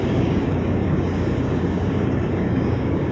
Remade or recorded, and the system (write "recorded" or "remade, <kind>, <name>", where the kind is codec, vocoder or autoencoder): remade, codec, DAC